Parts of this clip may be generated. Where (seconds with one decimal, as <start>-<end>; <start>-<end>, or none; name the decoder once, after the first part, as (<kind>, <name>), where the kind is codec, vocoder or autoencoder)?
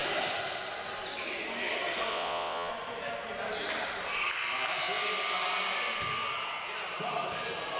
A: 2.1-2.7 (vocoder, WaveNeXt)